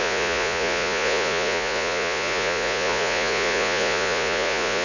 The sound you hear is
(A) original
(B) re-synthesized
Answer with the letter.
B